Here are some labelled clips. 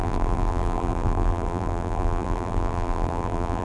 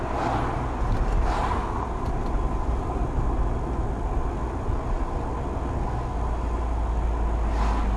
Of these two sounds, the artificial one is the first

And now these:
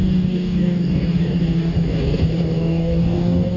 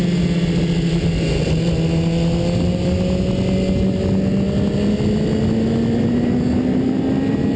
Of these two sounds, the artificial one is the first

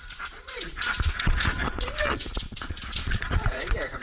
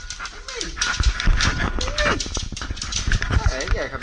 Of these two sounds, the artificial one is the first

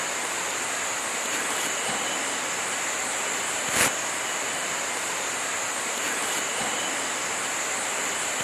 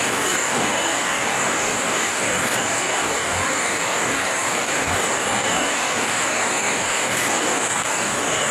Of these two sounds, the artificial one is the second